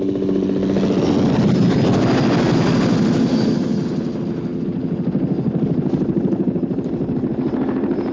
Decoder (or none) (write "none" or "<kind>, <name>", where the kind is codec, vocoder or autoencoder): none